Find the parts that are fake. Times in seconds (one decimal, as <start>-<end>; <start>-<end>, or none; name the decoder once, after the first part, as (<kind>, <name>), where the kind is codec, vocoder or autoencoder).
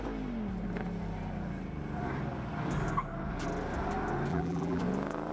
4.3-4.8 (vocoder, BigVGAN v2)